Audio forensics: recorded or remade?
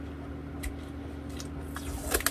recorded